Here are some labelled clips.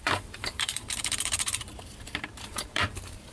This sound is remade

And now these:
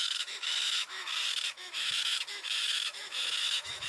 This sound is remade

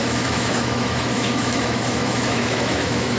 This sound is remade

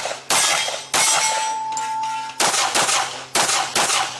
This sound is recorded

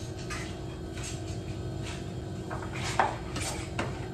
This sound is recorded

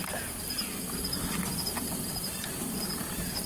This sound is recorded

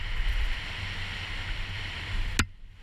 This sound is recorded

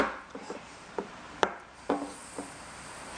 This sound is remade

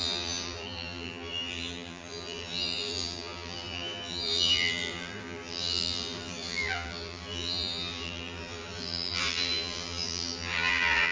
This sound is remade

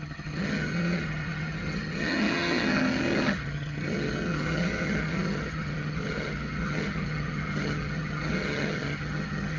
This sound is remade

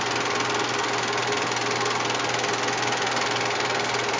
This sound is recorded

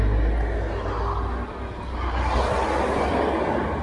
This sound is recorded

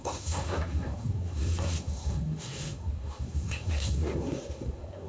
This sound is remade